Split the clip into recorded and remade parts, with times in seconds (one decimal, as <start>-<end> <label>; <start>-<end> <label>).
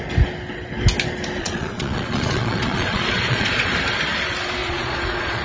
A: 0.0-1.4 recorded; 1.4-3.7 remade; 3.7-4.6 recorded; 4.6-5.4 remade